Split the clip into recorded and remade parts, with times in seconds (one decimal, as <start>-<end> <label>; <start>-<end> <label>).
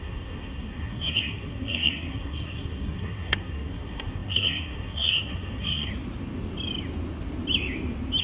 0.0-5.9 remade; 5.9-8.2 recorded